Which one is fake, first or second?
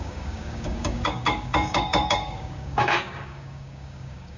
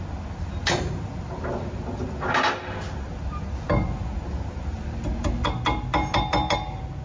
first